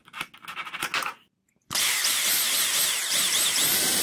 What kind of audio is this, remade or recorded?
recorded